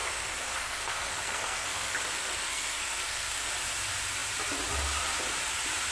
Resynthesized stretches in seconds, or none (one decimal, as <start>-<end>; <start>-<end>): 0.0-3.5